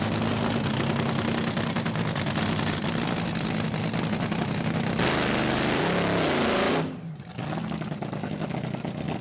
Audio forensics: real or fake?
real